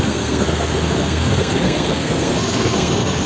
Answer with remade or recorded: remade